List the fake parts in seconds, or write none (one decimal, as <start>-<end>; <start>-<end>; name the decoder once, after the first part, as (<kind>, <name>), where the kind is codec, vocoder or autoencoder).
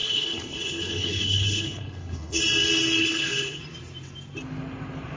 0.0-2.4 (codec, HILCodec); 3.0-3.6